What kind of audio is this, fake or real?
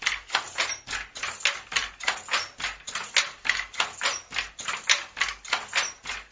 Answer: real